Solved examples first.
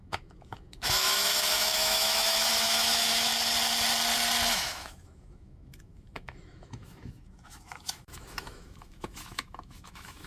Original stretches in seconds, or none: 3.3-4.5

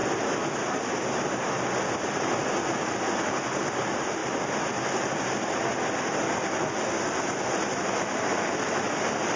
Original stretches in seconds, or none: 0.0-9.4

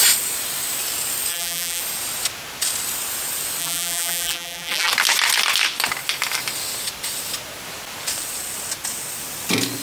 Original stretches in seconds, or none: 0.0-1.3; 1.8-3.6; 4.9-9.8

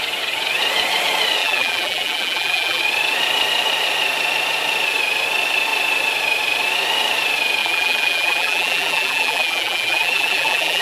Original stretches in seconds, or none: 0.0-1.4; 2.8-7.6

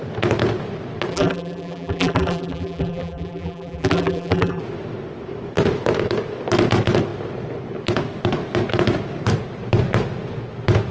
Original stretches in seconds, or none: 0.0-1.1; 4.6-10.9

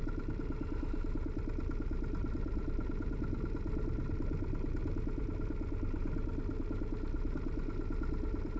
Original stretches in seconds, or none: 0.0-8.6

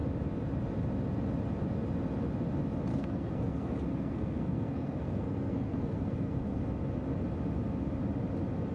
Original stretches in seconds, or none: 0.0-2.9; 6.6-8.7